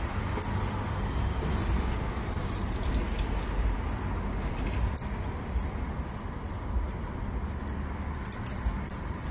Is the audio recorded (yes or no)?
yes